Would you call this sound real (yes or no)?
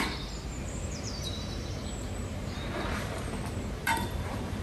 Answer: no